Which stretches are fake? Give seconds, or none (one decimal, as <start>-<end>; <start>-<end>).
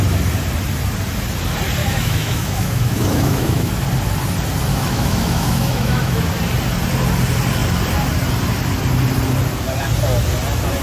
1.8-3.7; 4.7-6.3